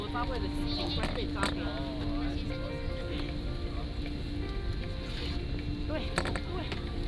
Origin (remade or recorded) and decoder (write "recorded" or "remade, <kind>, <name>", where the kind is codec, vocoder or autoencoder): recorded